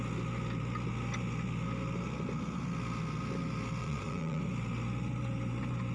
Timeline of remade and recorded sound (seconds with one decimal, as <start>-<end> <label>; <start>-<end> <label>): 0.0-3.8 recorded; 3.8-4.4 remade; 4.4-5.9 recorded